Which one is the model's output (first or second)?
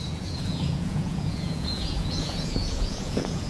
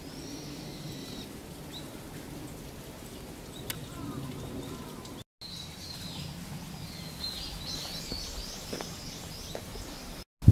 first